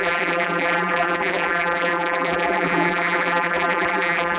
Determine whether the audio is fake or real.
fake